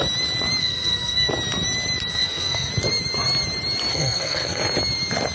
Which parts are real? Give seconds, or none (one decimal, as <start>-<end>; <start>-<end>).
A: 0.0-0.6; 1.3-2.1; 2.7-3.9; 4.6-5.3